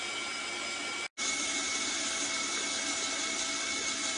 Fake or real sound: real